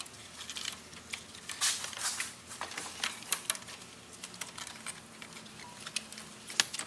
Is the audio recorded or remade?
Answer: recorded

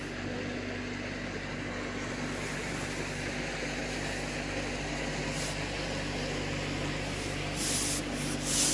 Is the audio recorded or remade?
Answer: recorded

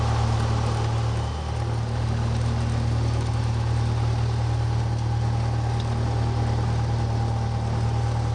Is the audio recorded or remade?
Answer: recorded